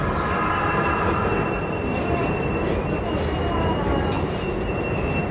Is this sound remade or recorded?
recorded